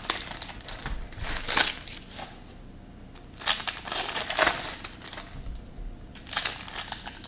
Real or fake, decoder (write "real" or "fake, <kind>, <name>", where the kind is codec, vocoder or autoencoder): real